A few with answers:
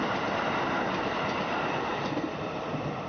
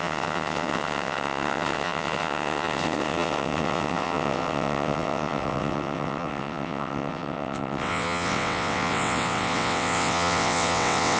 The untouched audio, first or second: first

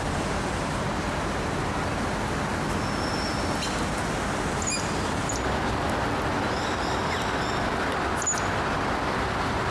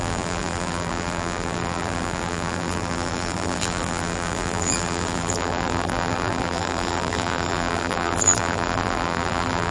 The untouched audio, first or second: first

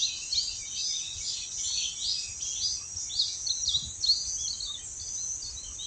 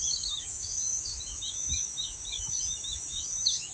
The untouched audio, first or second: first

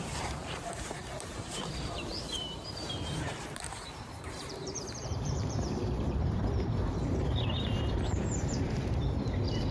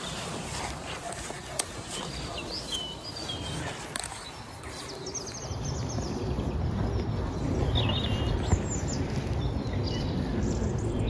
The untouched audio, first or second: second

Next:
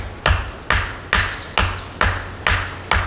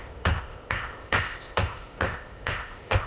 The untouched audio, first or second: first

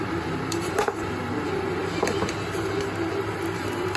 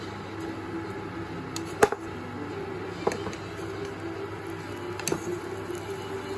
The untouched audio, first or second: second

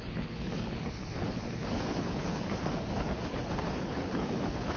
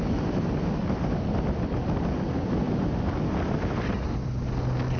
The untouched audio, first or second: second